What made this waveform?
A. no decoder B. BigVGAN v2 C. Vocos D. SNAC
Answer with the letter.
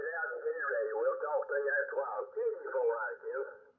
B